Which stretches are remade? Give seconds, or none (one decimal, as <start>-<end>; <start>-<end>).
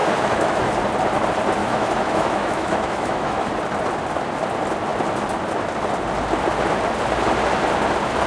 0.0-0.7; 1.6-3.5